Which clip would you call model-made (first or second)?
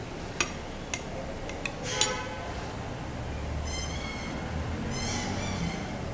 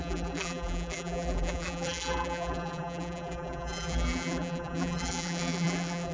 second